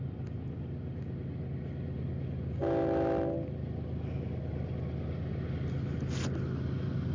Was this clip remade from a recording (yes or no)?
no